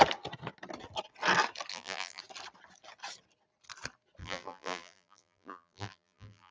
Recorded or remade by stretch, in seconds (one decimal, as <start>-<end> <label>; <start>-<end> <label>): 0.0-1.7 recorded; 1.7-2.2 remade; 2.2-4.2 recorded; 4.2-6.5 remade